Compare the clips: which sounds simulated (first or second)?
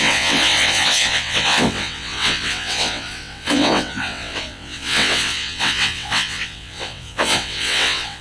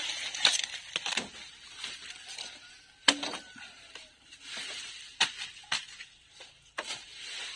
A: first